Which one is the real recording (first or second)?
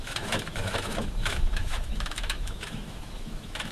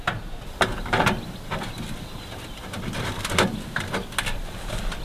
second